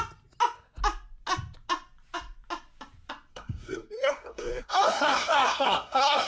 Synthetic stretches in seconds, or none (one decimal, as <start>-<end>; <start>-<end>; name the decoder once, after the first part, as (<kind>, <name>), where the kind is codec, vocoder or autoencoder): 3.3-6.3 (codec, SNAC)